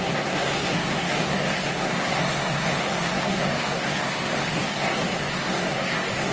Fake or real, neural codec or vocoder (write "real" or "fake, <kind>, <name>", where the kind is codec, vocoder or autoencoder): fake, codec, SNAC